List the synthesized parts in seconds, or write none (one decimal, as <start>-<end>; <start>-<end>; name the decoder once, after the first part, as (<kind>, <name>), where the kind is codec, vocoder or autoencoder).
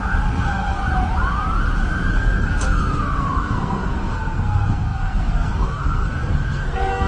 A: 0.0-0.8 (codec, SNAC); 2.1-7.1